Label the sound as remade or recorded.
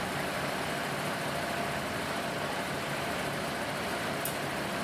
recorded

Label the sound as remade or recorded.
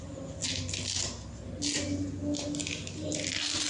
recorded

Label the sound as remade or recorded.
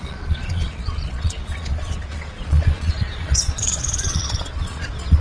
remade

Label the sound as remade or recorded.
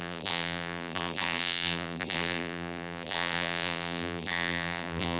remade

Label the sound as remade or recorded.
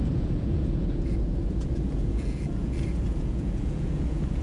remade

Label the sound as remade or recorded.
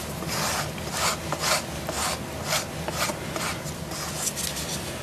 recorded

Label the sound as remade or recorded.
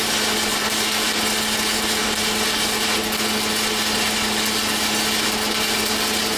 recorded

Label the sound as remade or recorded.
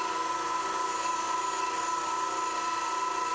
recorded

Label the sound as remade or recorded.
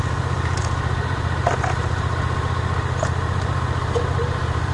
remade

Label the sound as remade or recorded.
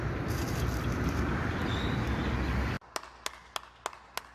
recorded